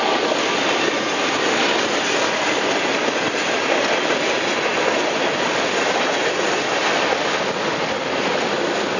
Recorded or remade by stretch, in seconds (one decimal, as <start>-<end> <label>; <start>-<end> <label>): 0.0-9.0 recorded